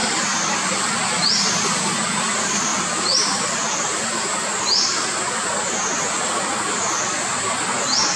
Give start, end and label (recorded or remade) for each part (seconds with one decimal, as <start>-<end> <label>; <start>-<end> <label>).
0.0-8.2 recorded